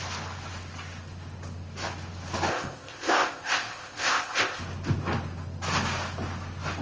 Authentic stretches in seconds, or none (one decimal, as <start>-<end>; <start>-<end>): 0.0-2.5; 4.6-6.8